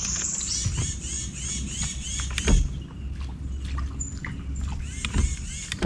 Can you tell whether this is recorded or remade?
recorded